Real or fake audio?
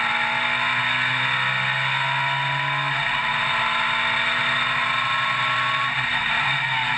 real